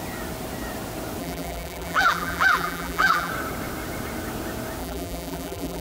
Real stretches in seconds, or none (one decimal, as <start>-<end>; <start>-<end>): 0.0-1.2; 3.3-4.8